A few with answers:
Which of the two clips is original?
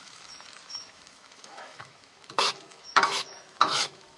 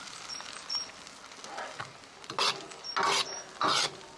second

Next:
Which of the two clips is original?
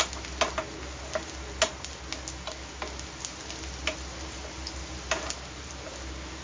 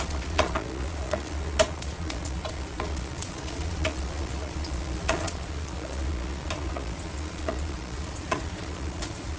first